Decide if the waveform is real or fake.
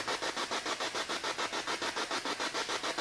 real